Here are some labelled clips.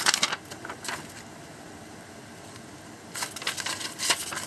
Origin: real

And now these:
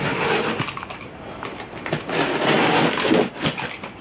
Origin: real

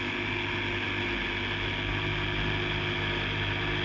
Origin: real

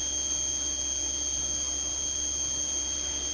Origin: real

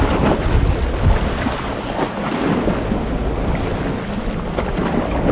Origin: real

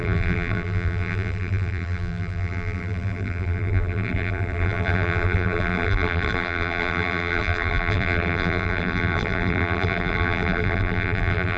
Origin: fake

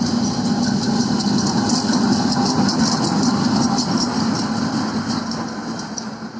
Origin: real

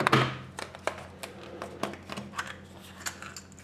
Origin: real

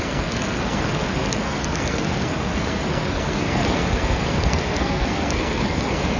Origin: fake